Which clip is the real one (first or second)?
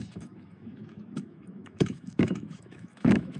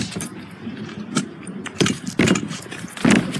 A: second